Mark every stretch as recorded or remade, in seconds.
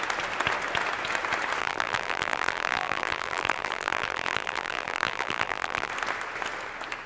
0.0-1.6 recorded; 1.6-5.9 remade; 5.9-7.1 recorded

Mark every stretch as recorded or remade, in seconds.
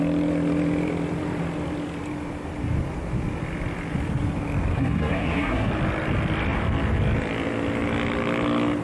0.0-4.7 recorded; 4.7-5.7 remade; 5.7-8.8 recorded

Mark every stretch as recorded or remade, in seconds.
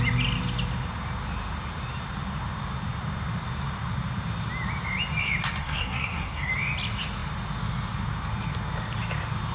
0.0-5.6 recorded; 5.6-6.5 remade; 6.5-9.5 recorded